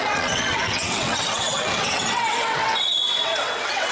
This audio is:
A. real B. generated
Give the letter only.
B